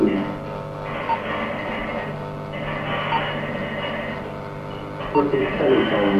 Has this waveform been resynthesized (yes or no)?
no